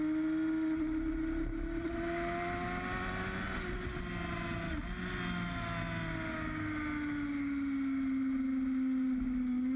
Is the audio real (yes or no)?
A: yes